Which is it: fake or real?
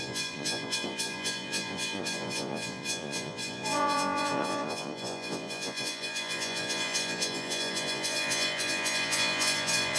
fake